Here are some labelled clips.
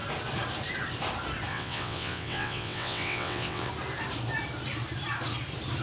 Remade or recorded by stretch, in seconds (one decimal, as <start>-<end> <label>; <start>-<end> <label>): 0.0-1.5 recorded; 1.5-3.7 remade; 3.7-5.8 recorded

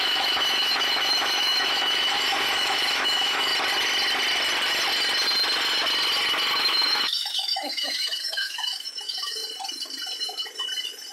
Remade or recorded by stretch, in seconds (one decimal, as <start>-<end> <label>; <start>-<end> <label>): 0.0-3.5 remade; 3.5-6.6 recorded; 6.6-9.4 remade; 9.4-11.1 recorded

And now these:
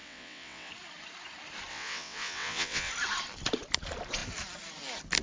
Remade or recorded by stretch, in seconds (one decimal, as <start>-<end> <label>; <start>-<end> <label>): 0.0-0.7 remade; 0.7-1.7 recorded; 1.7-2.9 remade; 2.9-5.2 recorded

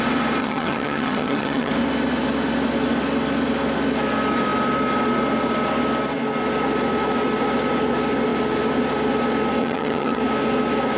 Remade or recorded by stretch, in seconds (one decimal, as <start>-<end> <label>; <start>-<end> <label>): 0.0-0.4 recorded; 0.4-1.7 remade; 1.7-9.6 recorded; 9.6-10.2 remade; 10.2-11.0 recorded

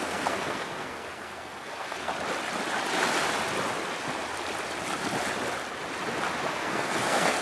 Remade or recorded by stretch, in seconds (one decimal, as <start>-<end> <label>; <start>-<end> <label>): 0.0-2.1 remade; 2.1-6.5 recorded; 6.5-7.4 remade

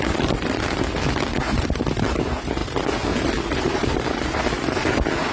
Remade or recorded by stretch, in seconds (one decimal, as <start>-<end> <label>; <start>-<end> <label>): 0.0-5.3 recorded

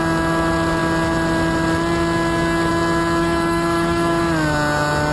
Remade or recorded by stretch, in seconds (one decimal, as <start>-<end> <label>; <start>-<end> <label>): 0.0-3.2 recorded; 3.2-4.2 remade; 4.2-5.1 recorded

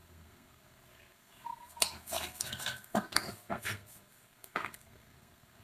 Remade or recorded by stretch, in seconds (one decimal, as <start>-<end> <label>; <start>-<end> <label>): 0.0-5.6 remade